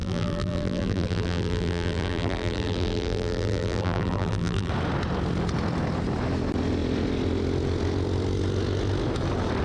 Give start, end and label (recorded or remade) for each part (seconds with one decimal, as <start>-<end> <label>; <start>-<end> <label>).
0.0-4.7 remade; 4.7-9.6 recorded